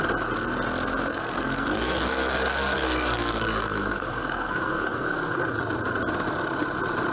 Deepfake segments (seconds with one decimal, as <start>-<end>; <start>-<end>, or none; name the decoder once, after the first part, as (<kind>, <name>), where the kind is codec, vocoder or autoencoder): 1.1-5.4 (codec, SNAC)